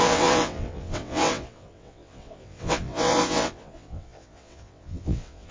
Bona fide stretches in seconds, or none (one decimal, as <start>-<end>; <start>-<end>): none